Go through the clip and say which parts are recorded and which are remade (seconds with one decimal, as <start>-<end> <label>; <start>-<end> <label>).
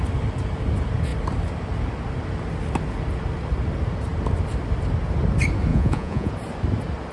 0.0-5.7 recorded; 5.7-6.3 remade; 6.3-7.1 recorded